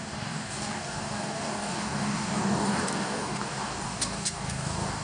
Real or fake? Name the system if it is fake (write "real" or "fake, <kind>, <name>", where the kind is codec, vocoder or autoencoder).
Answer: fake, codec, DAC